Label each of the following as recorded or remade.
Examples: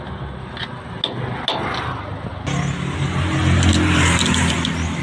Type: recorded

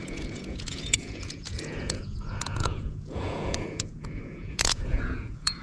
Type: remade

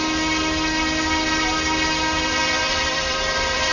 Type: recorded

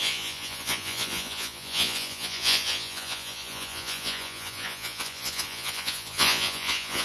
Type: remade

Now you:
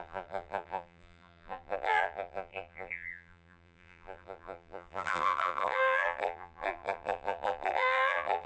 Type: remade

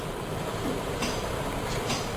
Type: recorded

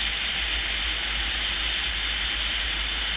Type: recorded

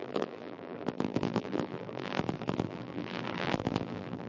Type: remade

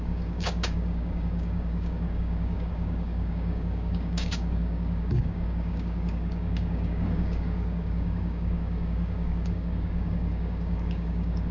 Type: remade